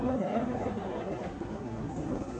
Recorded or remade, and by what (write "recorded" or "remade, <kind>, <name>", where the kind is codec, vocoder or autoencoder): remade, codec, SNAC